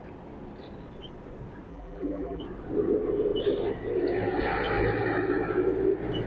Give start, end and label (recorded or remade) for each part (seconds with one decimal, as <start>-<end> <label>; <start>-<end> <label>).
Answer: 0.0-1.7 recorded; 1.7-2.4 remade; 2.4-6.3 recorded